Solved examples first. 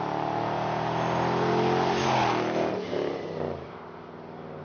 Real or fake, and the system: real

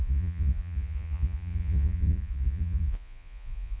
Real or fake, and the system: fake, vocoder, Vocos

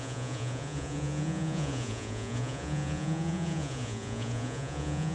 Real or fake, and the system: fake, vocoder, Vocos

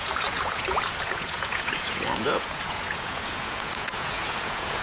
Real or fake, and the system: fake, vocoder, Vocos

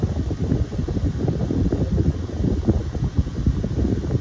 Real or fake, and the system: real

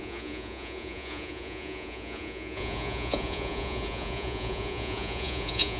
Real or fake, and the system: fake, vocoder, Vocos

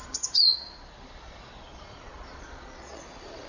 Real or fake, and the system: fake, vocoder, Vocos